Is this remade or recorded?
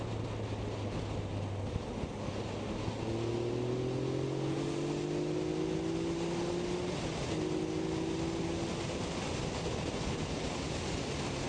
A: recorded